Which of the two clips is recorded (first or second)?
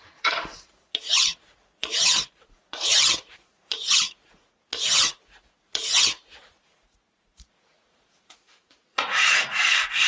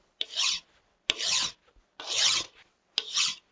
second